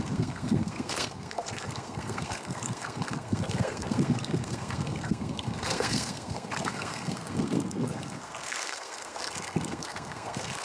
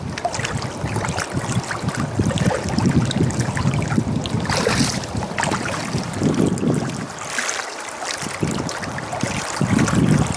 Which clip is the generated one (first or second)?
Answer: first